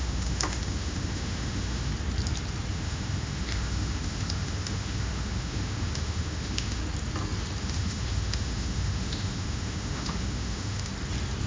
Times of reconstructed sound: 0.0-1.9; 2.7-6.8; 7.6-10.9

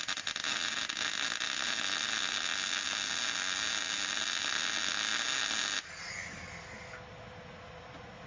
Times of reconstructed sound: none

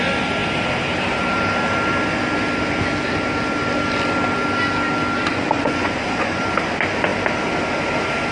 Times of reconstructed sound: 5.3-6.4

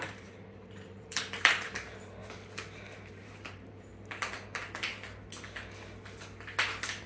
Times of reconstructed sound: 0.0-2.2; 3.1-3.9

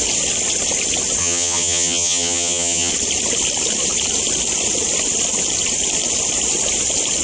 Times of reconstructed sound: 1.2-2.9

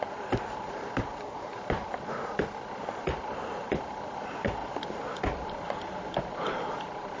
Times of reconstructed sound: 0.0-1.5; 3.0-7.2

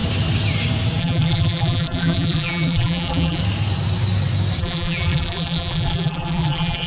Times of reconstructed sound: 1.0-3.4; 4.6-6.9